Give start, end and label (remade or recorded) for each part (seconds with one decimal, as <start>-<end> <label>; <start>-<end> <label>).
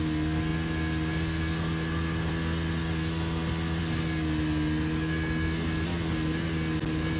0.0-7.2 recorded